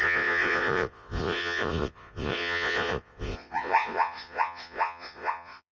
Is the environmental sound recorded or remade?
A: remade